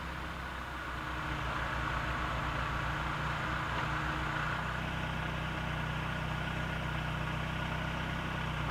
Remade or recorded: recorded